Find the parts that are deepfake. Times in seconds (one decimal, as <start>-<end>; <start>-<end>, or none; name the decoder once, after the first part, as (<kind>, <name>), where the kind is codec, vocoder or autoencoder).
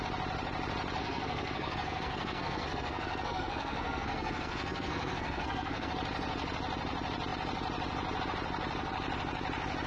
1.0-5.9 (codec, SNAC)